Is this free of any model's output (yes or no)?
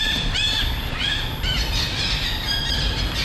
yes